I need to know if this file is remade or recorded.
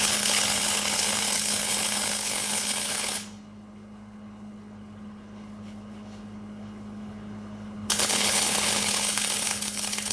remade